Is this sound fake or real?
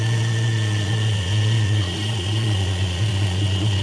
fake